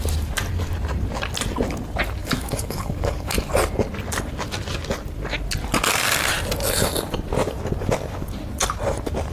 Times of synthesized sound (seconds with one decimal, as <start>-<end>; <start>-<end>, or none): 2.2-3.5